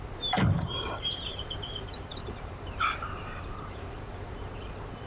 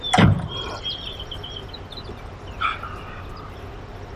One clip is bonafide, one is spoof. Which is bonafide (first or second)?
second